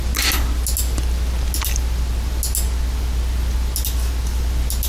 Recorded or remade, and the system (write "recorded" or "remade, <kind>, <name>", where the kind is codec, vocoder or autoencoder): recorded